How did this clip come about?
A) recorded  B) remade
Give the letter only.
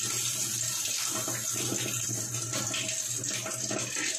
A